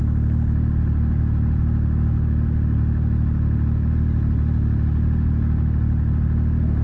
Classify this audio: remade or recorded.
recorded